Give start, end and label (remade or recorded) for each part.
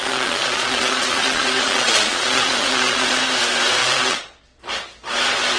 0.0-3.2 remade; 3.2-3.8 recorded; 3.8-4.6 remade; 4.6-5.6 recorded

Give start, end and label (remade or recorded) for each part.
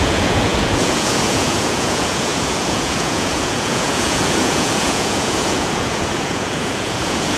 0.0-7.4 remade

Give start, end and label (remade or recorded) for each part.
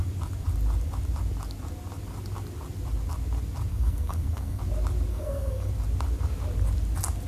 0.0-3.7 recorded; 3.7-4.6 remade; 4.6-5.1 recorded; 5.1-5.7 remade; 5.7-7.3 recorded